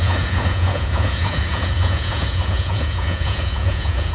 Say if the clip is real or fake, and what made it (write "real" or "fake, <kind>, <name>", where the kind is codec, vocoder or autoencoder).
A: fake, vocoder, Vocos